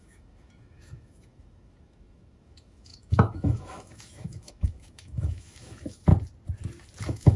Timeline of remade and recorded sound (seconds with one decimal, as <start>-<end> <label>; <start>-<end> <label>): 0.0-6.1 remade; 6.1-7.0 recorded; 7.0-7.4 remade